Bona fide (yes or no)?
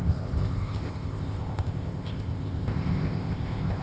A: no